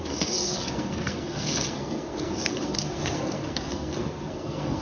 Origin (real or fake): fake